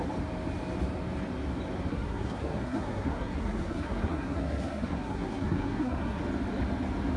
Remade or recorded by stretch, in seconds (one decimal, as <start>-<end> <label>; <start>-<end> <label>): 0.0-1.9 recorded; 1.9-6.2 remade; 6.2-7.2 recorded